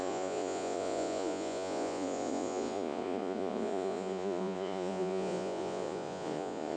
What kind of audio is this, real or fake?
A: fake